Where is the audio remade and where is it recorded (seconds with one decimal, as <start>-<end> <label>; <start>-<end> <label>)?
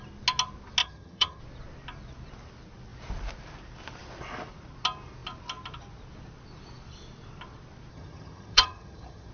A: 0.0-0.8 recorded; 0.8-1.4 remade; 1.4-7.9 recorded; 7.9-9.3 remade